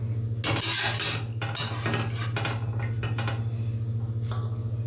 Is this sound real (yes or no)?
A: yes